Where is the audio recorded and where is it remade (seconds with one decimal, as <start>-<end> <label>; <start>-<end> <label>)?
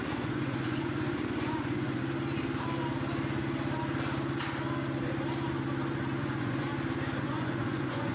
0.0-2.0 remade; 2.0-6.2 recorded; 6.2-6.7 remade; 6.7-7.2 recorded; 7.2-8.1 remade